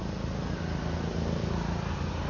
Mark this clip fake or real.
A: real